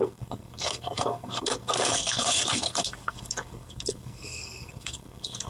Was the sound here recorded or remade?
remade